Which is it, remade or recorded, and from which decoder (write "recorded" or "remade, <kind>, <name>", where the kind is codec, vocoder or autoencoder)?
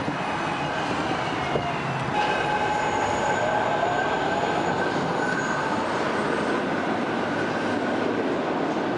recorded